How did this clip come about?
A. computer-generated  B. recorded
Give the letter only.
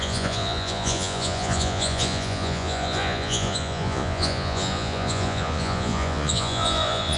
A